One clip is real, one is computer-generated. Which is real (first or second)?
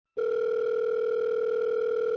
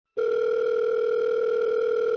first